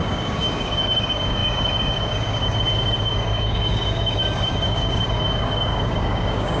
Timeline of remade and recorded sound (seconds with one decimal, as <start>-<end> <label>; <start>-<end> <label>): 0.0-6.6 remade